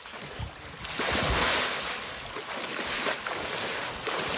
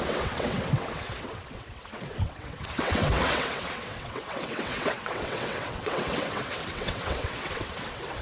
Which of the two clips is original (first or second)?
first